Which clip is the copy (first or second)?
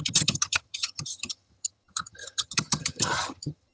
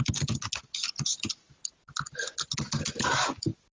first